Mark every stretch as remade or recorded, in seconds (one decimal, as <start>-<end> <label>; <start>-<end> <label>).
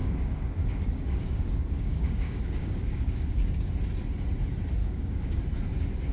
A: 0.0-3.7 remade; 3.7-4.8 recorded; 4.8-5.4 remade; 5.4-6.1 recorded